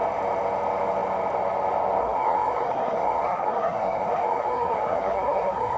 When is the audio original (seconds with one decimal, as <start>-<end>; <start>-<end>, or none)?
0.0-2.0